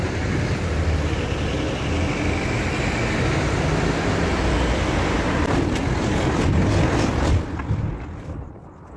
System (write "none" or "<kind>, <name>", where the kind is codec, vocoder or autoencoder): none